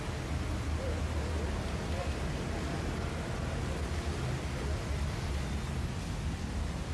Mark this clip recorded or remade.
recorded